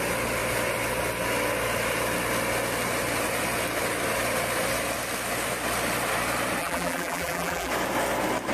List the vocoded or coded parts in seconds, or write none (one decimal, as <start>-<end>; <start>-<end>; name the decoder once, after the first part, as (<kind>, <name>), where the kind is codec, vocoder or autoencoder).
6.6-7.7 (vocoder, BigVGAN v2)